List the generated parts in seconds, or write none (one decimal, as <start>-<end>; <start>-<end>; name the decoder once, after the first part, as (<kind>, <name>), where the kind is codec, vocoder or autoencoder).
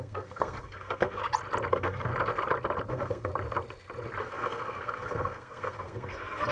0.0-1.2 (codec, SNAC); 1.7-2.1; 2.9-3.3; 4.2-6.5